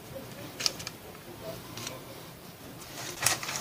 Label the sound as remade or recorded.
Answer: remade